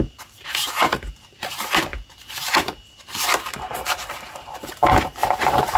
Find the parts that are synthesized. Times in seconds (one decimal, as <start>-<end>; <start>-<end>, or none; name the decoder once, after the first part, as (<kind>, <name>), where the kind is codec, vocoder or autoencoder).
0.0-1.9 (vocoder, BigVGAN v2); 4.1-5.8